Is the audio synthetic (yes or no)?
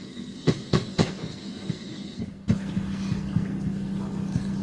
yes